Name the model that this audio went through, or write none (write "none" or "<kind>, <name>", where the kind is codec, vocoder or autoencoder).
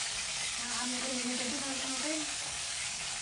codec, DAC